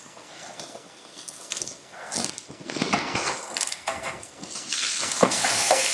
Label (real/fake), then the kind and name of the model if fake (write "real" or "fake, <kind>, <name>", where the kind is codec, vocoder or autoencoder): fake, codec, SNAC